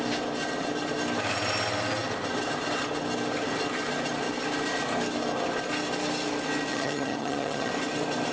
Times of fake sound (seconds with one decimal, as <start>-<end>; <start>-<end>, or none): 6.7-7.7